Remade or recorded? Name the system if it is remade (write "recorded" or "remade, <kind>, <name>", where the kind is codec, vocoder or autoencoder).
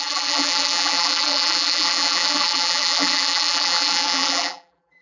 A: remade, vocoder, BigVGAN v2